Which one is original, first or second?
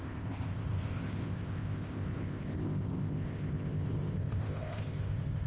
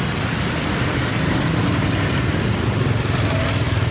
second